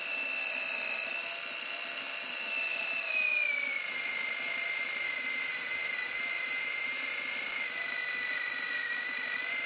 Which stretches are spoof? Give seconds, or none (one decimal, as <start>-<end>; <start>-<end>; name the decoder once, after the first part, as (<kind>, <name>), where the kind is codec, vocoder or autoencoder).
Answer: 5.5-7.0 (vocoder, BigVGAN v2)